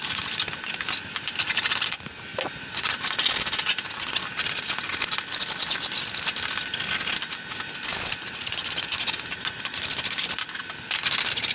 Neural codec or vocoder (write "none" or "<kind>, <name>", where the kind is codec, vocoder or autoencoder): none